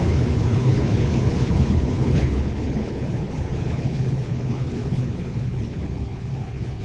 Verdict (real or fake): fake